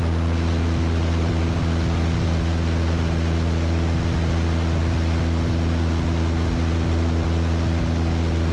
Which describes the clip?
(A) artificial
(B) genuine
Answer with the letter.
B